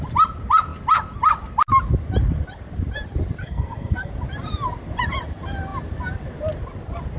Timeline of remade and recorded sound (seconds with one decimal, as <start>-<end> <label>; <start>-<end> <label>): 0.0-3.4 recorded; 3.4-4.1 remade; 4.1-7.2 recorded